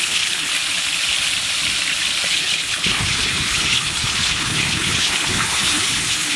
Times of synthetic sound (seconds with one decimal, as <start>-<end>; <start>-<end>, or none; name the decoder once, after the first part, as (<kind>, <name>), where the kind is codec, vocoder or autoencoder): 0.0-0.5 (codec, HILCodec); 2.3-6.4